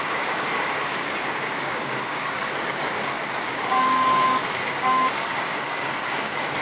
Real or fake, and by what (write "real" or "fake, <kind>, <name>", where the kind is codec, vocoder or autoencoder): fake, codec, DAC